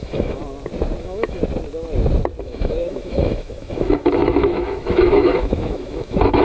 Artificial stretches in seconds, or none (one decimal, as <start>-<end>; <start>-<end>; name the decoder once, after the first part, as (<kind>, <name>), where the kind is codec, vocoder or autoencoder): 0.0-0.4 (autoencoder, DAC-VAE); 1.0-1.4; 2.4-6.4